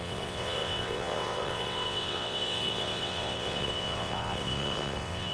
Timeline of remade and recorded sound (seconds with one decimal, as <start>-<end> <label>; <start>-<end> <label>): 0.0-5.3 remade

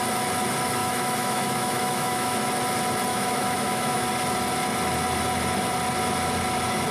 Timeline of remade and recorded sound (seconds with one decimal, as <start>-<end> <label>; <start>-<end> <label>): 0.0-0.8 recorded; 0.8-2.5 remade; 2.5-3.1 recorded; 3.1-4.1 remade; 4.1-6.9 recorded

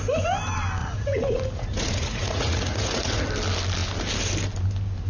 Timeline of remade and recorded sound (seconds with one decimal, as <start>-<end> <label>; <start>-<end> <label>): 0.0-0.8 recorded; 0.8-3.2 remade; 3.2-5.1 recorded

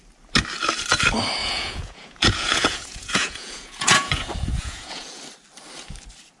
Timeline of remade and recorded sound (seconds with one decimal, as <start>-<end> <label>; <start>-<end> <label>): 0.0-1.4 recorded; 1.4-5.2 remade; 5.2-6.4 recorded